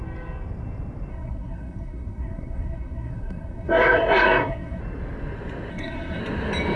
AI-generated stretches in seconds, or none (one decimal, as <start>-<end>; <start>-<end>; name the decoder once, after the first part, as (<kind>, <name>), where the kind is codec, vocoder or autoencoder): 1.1-4.8 (codec, SNAC); 5.7-6.2